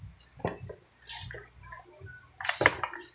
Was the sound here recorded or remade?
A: recorded